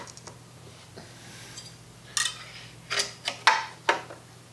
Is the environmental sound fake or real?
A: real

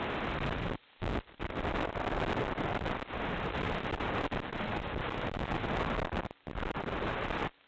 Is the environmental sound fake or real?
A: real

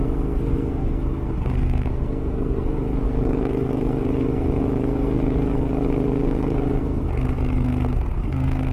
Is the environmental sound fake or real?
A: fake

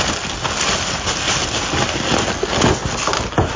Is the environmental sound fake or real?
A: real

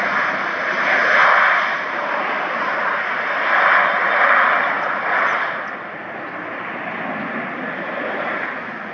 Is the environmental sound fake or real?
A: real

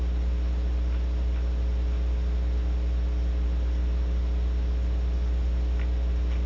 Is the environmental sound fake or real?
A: real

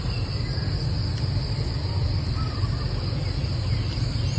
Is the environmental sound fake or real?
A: real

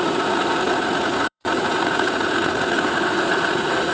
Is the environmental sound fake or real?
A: fake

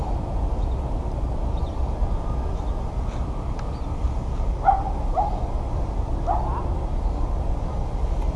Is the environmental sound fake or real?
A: real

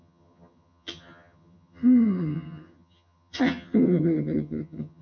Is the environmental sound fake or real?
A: fake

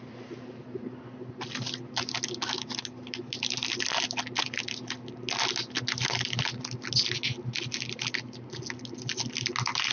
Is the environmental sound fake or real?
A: real